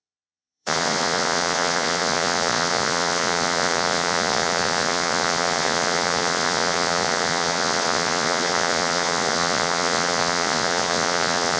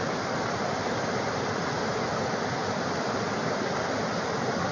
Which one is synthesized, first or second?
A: first